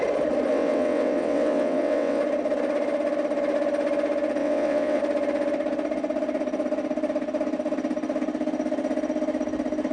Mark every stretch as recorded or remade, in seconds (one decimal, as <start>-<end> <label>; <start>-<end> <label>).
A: 0.0-0.5 recorded; 0.5-2.2 remade; 2.2-4.4 recorded; 4.4-5.0 remade; 5.0-9.9 recorded